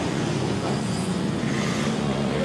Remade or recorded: remade